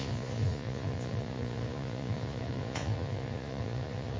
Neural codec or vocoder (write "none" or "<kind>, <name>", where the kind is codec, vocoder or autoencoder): vocoder, Vocos